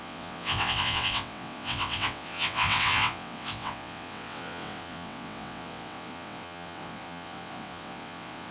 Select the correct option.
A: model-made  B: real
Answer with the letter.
A